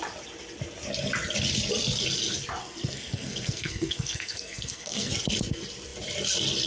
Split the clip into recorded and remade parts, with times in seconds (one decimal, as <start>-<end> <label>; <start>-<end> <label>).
0.0-2.6 recorded; 2.6-5.1 remade; 5.1-6.7 recorded

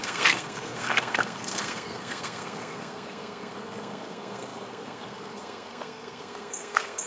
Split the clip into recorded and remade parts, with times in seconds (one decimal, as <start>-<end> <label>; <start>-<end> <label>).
0.0-7.1 remade

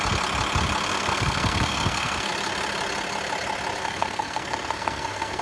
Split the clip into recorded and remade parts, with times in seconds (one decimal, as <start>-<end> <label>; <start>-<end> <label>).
0.0-0.9 recorded; 0.9-2.3 remade; 2.3-3.8 recorded; 3.8-5.4 remade

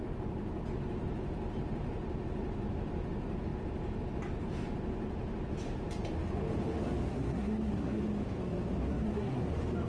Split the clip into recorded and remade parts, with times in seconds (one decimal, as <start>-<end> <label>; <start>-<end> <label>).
0.0-7.1 recorded; 7.1-8.0 remade; 8.0-8.9 recorded; 8.9-9.4 remade; 9.4-9.9 recorded

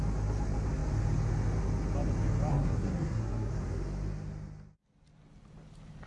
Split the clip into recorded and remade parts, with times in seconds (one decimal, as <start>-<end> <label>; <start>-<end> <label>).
0.0-2.5 recorded; 2.5-3.5 remade; 3.5-6.1 recorded

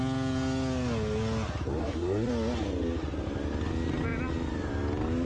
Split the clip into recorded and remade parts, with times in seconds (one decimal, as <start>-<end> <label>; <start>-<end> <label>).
0.0-1.8 recorded; 1.8-2.3 remade; 2.3-5.2 recorded

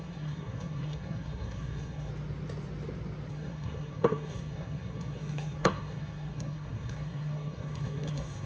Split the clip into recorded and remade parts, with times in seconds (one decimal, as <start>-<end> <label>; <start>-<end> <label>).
0.0-2.1 remade; 2.1-3.3 recorded; 3.3-8.5 remade

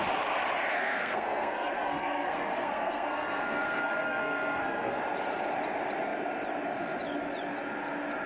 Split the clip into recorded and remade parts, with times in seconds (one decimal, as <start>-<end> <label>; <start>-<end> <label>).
0.0-0.7 recorded; 0.7-5.0 remade; 5.0-8.3 recorded